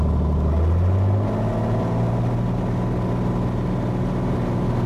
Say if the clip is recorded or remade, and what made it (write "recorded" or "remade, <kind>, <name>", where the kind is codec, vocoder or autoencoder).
recorded